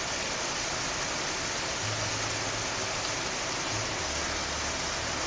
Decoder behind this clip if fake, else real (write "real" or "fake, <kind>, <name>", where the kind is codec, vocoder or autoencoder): real